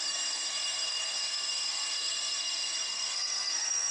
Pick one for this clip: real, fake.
fake